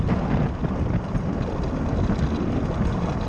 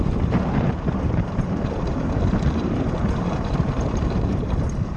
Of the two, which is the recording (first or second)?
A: first